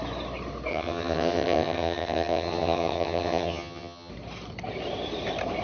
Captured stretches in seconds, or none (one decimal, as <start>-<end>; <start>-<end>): 0.0-0.7; 4.1-5.6